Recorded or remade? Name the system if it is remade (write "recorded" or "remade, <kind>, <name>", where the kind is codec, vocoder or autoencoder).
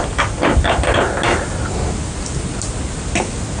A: recorded